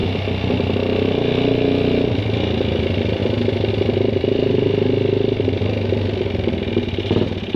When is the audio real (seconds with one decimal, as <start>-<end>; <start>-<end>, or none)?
0.0-7.6